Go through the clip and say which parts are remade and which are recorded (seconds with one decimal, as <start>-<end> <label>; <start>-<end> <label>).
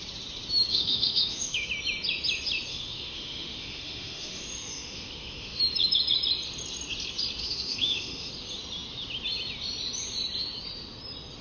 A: 0.0-0.7 recorded; 0.7-1.7 remade; 1.7-2.7 recorded; 2.7-5.6 remade; 5.6-7.4 recorded; 7.4-8.3 remade; 8.3-11.4 recorded